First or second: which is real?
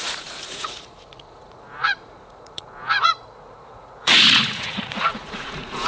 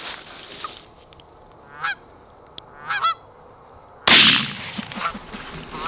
second